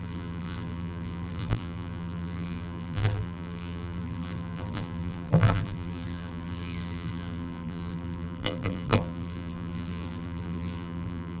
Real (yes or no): no